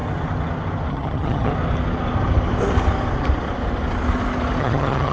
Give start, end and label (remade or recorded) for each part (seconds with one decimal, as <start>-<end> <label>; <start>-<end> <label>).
0.0-0.9 recorded; 0.9-1.5 remade; 1.5-4.6 recorded; 4.6-5.1 remade